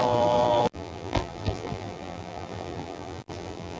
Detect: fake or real fake